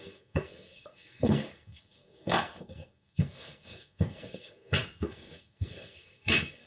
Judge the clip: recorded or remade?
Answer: remade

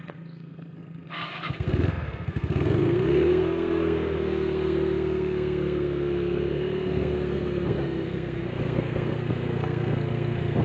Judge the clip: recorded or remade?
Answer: remade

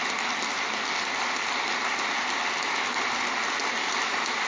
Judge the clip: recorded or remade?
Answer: recorded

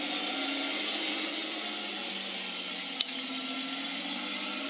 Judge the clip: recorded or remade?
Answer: recorded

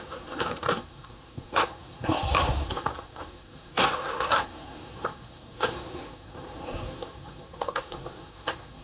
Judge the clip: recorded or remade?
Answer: remade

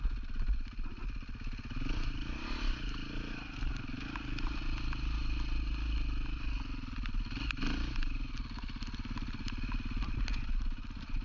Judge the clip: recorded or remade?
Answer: recorded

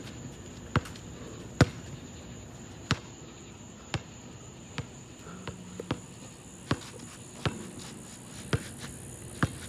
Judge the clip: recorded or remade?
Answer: recorded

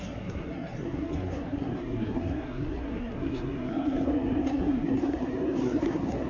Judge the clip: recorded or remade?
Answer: remade